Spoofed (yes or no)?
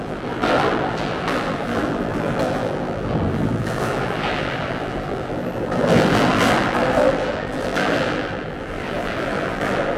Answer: yes